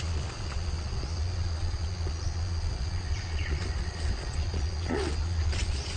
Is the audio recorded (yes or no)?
no